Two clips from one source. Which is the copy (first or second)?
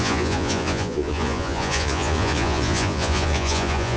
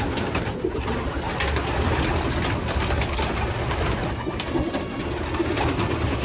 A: first